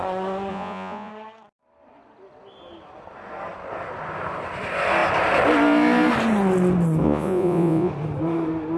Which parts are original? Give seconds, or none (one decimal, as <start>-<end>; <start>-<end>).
0.0-0.5; 1.1-7.0; 7.9-8.8

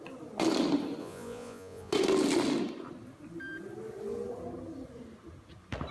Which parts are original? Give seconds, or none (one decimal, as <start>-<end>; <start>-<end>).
0.0-1.0; 1.9-5.9

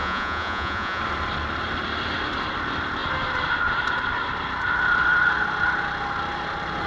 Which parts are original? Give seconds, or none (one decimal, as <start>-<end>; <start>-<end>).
1.0-6.9

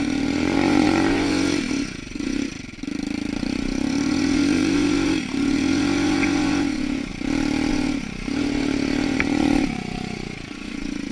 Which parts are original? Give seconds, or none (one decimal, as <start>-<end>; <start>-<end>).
2.5-3.4; 7.1-7.7

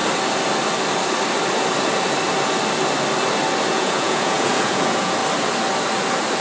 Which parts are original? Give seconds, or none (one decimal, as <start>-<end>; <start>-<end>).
0.0-3.7; 5.2-6.4

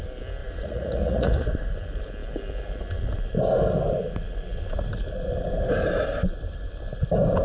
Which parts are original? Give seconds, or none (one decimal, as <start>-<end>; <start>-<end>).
0.0-0.4; 1.7-7.4

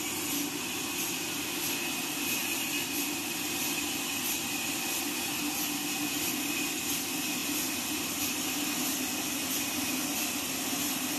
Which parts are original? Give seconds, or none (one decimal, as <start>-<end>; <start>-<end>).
0.0-11.2